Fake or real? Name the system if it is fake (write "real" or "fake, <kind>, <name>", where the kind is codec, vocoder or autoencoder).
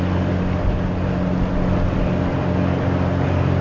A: real